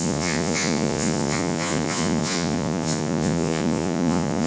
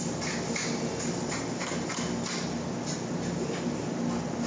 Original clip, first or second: second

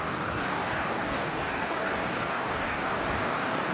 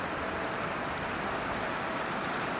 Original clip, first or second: second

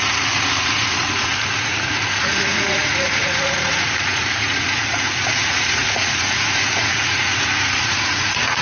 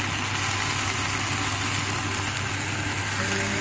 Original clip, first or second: second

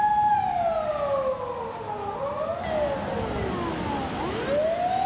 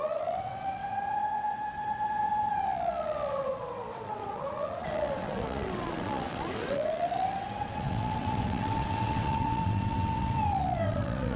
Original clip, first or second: first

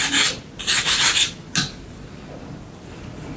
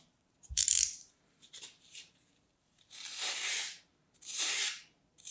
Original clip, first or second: first